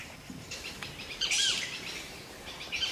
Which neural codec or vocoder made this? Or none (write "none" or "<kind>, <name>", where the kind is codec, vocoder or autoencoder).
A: vocoder, BigVGAN v2